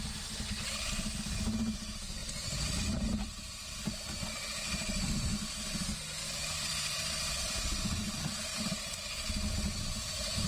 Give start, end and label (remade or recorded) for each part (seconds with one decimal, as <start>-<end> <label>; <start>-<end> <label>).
0.0-2.2 recorded; 2.2-5.7 remade; 5.7-6.2 recorded; 6.2-8.5 remade; 8.5-10.5 recorded